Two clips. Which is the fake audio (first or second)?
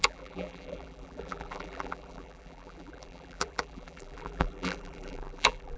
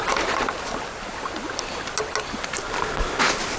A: first